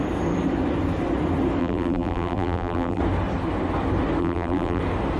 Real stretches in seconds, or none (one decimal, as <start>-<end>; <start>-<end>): 0.0-1.6; 3.0-4.2; 4.8-5.2